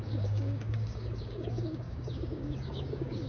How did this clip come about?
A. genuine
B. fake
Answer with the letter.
B